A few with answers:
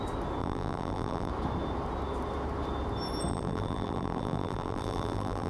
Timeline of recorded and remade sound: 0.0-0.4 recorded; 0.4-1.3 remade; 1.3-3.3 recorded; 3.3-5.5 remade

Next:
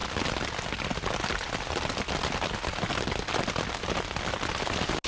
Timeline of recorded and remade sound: 0.0-2.9 remade; 2.9-5.1 recorded

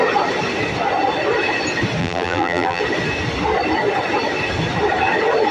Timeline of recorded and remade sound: 0.0-2.0 recorded; 2.0-2.8 remade; 2.8-5.5 recorded

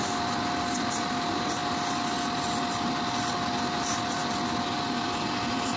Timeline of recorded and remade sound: 0.0-1.6 remade; 1.6-3.7 recorded; 3.7-4.2 remade; 4.2-5.8 recorded

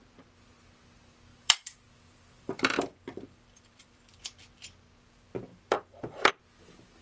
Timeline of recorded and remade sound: 0.0-1.3 recorded; 1.3-4.2 remade; 4.2-5.5 recorded; 5.5-6.3 remade; 6.3-7.0 recorded